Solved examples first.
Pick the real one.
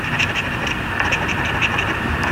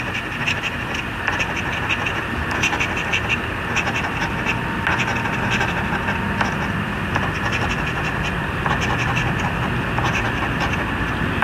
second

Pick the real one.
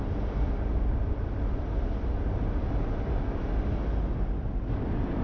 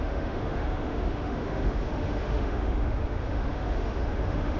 first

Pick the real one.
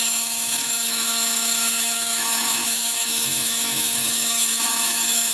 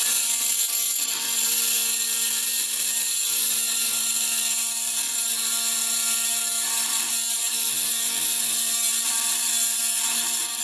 second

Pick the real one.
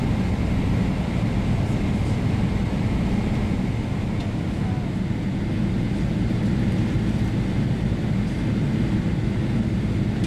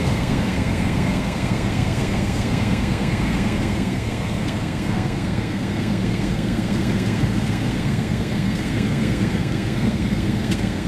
first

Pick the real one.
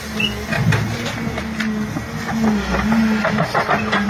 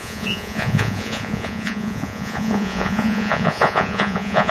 first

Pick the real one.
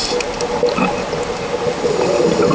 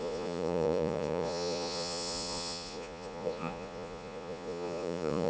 first